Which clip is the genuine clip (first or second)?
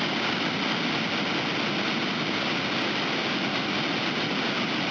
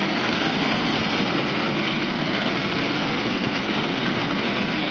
first